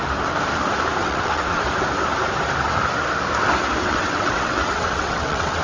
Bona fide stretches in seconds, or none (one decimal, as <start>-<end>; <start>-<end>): 0.0-1.0; 1.6-3.8